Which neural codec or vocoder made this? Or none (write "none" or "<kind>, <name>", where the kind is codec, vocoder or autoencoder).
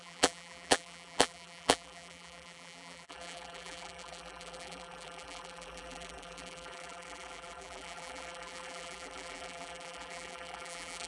vocoder, BigVGAN v2